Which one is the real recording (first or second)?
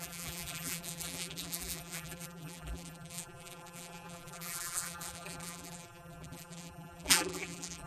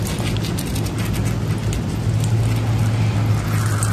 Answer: second